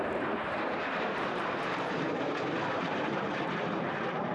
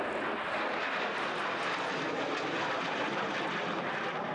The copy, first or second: first